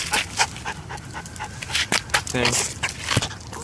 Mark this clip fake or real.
real